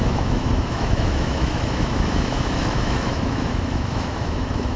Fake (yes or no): yes